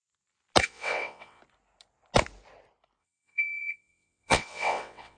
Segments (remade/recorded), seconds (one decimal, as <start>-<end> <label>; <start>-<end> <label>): 0.0-0.6 recorded; 0.6-1.4 remade; 1.4-3.0 recorded; 3.0-5.2 remade